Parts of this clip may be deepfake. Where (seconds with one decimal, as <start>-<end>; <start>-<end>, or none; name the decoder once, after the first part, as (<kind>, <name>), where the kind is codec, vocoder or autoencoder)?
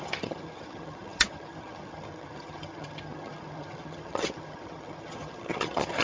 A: 0.0-6.0 (vocoder, HiFi-GAN)